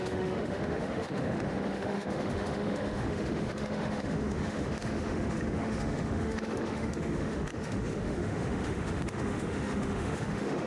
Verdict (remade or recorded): remade